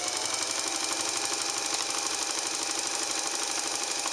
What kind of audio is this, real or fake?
real